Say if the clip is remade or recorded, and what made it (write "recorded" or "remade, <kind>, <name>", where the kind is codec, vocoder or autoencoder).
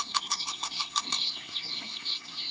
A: remade, codec, SNAC